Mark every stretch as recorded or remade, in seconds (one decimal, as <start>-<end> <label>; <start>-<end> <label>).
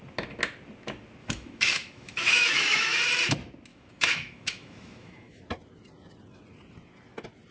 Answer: 0.0-1.2 recorded; 1.2-3.0 remade; 3.0-3.7 recorded; 3.7-5.4 remade; 5.4-7.5 recorded